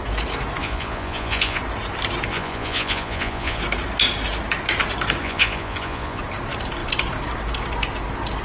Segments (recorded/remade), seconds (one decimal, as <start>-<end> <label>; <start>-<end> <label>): 0.0-0.6 recorded; 0.6-1.6 remade; 1.6-2.3 recorded; 2.3-3.6 remade; 3.6-5.2 recorded; 5.2-6.2 remade; 6.2-8.4 recorded